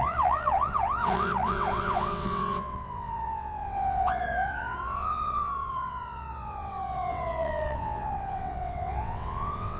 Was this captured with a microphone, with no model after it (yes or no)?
no